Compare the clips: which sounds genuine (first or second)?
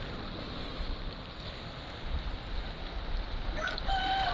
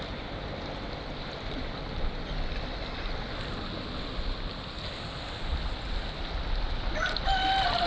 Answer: second